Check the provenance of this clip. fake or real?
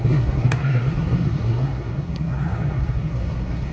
fake